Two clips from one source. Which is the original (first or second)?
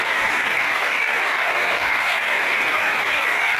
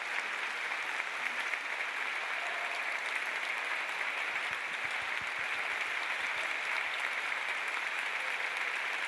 second